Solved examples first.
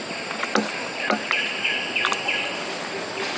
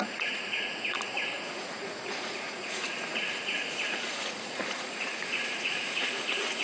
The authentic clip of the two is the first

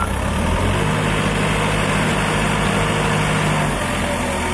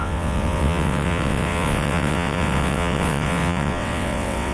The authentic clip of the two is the first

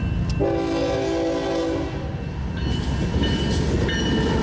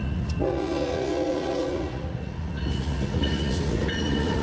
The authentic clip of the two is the first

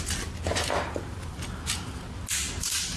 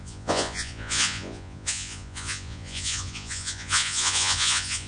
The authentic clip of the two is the first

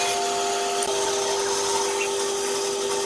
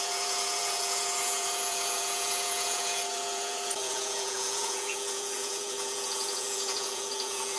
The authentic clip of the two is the first